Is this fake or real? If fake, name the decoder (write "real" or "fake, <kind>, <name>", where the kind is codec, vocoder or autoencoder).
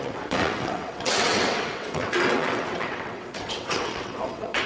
fake, vocoder, WaveNeXt